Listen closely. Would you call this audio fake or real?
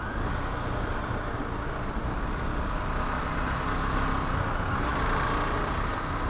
real